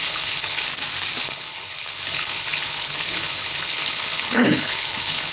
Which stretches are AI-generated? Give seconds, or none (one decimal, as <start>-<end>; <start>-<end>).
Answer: 0.0-0.7; 1.2-5.3